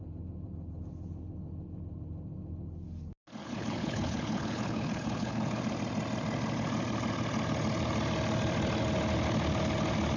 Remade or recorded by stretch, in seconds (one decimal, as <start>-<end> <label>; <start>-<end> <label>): 0.0-3.4 recorded; 3.4-5.6 remade; 5.6-10.2 recorded

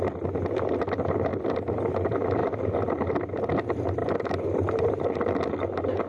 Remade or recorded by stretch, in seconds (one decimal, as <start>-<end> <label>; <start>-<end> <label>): 0.0-1.3 recorded; 1.3-1.8 remade; 1.8-2.4 recorded; 2.4-3.5 remade; 3.5-4.0 recorded; 4.0-4.9 remade; 4.9-6.1 recorded

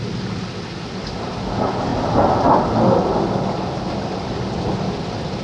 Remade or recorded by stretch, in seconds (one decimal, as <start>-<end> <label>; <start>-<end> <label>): 0.0-5.4 recorded

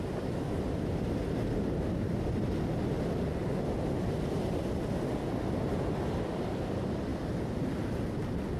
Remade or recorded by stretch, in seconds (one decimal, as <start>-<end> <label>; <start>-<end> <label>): 0.0-8.6 recorded

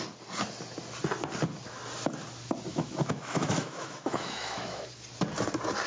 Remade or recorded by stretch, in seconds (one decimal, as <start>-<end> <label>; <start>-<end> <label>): 0.0-2.7 recorded; 2.7-4.9 remade; 4.9-5.9 recorded

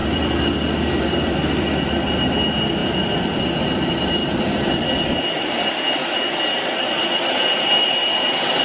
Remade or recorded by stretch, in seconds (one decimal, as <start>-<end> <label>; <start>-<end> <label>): 0.0-1.8 remade; 1.8-2.8 recorded; 2.8-3.4 remade; 3.4-4.2 recorded; 4.2-8.6 remade

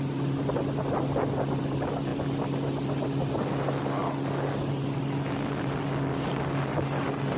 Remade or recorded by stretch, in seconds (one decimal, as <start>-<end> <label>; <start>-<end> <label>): 0.0-7.4 recorded